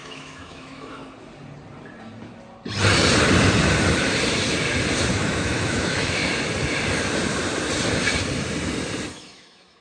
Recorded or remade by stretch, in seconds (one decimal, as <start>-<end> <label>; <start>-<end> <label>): 0.0-1.0 remade; 1.0-5.1 recorded; 5.1-6.2 remade; 6.2-9.1 recorded; 9.1-9.8 remade